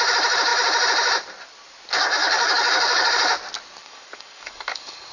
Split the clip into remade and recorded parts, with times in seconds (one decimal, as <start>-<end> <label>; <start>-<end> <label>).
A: 0.0-2.2 recorded; 2.2-3.1 remade; 3.1-3.8 recorded; 3.8-5.1 remade